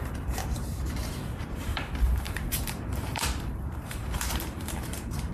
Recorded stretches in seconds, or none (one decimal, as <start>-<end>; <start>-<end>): none